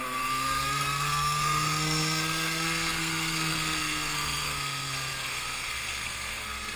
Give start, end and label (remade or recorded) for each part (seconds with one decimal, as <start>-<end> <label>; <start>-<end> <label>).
0.0-6.8 remade